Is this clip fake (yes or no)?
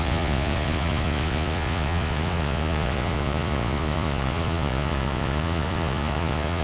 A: yes